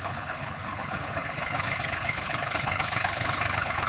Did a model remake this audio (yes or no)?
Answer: yes